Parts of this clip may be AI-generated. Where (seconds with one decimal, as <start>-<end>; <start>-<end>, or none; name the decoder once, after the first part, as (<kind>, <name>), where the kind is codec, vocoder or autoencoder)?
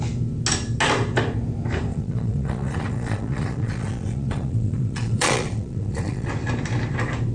1.9-6.3 (vocoder, Vocos)